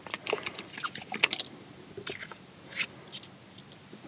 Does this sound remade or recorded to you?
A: recorded